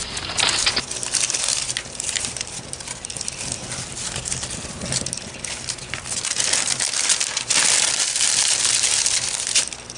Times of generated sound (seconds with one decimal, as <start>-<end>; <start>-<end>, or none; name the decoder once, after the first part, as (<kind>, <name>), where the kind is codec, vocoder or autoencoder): none

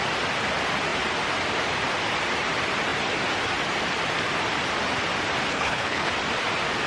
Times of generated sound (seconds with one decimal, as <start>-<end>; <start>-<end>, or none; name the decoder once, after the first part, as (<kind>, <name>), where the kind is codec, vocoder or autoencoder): 5.5-6.1 (codec, HILCodec)

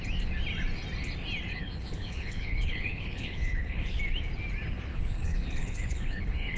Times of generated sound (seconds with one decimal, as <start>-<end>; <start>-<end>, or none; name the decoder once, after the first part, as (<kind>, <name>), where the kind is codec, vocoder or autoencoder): 1.5-4.0 (codec, HILCodec); 4.9-6.6

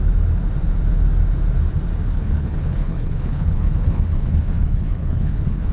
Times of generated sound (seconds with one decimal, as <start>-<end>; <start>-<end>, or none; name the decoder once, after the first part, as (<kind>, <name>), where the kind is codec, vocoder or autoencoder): 2.1-5.7 (codec, HILCodec)

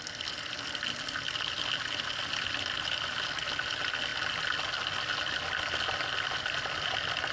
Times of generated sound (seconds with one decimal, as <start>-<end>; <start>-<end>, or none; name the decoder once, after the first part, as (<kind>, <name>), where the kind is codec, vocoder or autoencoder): none

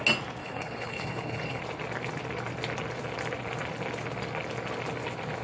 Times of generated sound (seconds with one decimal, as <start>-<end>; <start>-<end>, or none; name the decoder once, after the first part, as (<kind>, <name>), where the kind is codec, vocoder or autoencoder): 0.4-1.6 (codec, HILCodec)

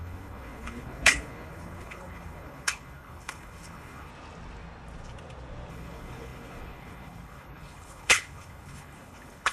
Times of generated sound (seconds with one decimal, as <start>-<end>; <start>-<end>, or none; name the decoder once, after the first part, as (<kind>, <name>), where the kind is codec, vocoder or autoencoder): 0.0-4.1 (codec, HILCodec); 5.7-9.5